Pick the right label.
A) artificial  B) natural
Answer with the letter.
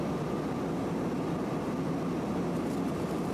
B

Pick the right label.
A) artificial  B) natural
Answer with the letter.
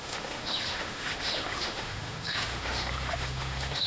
A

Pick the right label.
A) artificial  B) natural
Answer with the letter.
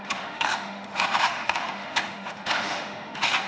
A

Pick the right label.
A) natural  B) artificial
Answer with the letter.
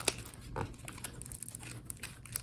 A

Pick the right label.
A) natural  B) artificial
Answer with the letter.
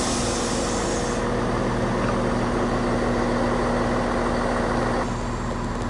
A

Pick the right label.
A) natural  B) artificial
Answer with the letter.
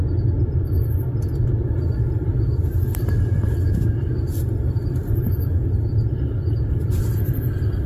A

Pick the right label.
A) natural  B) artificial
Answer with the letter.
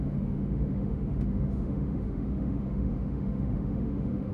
B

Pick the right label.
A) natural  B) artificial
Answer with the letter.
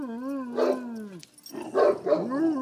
A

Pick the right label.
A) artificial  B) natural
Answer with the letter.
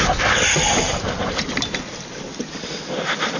B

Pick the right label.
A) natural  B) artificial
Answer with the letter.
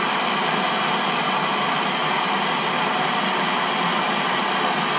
A